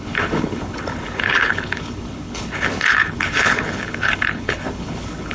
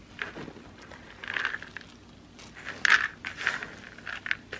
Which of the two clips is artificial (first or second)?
first